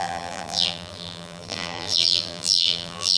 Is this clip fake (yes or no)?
yes